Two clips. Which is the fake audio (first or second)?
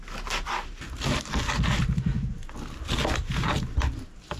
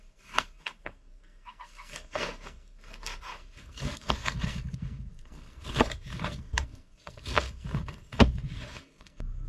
second